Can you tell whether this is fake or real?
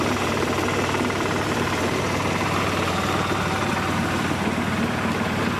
fake